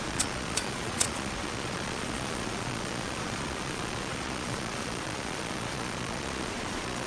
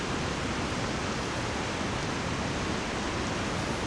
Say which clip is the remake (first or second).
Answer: first